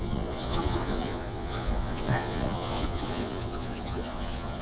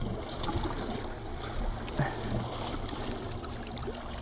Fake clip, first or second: first